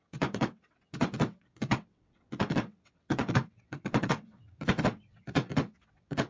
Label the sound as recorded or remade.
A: remade